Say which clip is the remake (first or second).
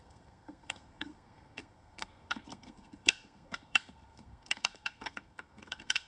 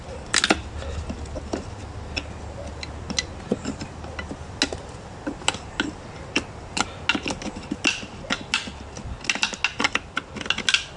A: first